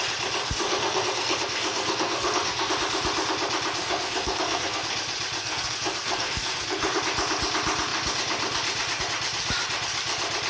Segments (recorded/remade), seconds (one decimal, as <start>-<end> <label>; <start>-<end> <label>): 0.0-0.4 recorded; 0.4-2.7 remade; 2.7-3.8 recorded; 3.8-4.8 remade; 4.8-5.4 recorded; 5.4-7.0 remade; 7.0-10.5 recorded